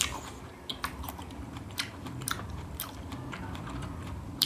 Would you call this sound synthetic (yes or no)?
yes